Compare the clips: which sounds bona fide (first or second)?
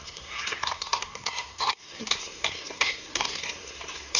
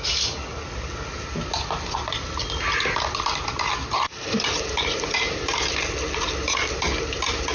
second